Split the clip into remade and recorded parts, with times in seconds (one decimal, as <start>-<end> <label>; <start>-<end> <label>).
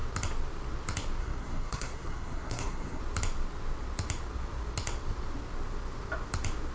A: 0.0-1.2 recorded; 1.2-3.0 remade; 3.0-6.7 recorded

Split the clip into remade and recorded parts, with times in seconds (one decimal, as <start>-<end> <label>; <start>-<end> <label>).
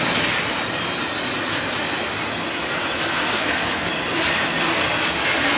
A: 0.0-3.3 recorded; 3.3-3.9 remade; 3.9-5.6 recorded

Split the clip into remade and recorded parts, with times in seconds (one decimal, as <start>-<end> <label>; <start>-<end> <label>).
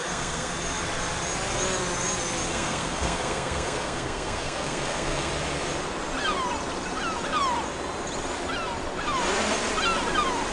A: 0.0-0.5 remade; 0.5-2.5 recorded; 2.5-5.3 remade; 5.3-10.5 recorded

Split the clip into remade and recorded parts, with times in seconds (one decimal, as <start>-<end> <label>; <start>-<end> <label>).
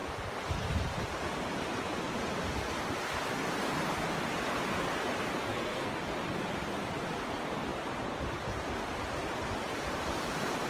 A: 0.0-5.5 recorded; 5.5-6.0 remade; 6.0-10.7 recorded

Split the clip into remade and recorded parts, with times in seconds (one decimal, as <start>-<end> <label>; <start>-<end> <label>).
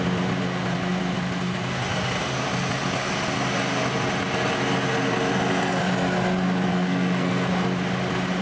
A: 0.0-6.7 recorded; 6.7-7.5 remade; 7.5-8.4 recorded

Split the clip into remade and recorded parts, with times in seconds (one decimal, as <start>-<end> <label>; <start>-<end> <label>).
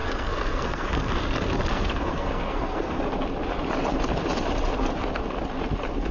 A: 0.0-1.2 remade; 1.2-1.7 recorded; 1.7-3.0 remade; 3.0-6.1 recorded